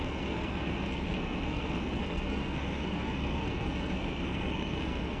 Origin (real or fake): fake